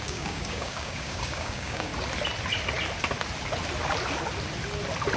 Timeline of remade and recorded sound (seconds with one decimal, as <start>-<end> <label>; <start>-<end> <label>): 0.0-1.9 remade; 1.9-5.2 recorded